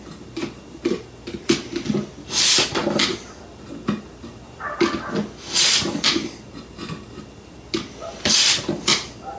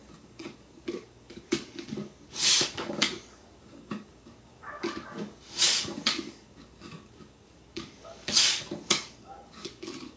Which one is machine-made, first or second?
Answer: second